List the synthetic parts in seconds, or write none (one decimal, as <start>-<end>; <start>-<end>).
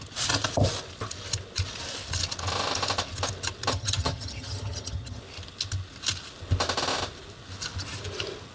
3.7-5.2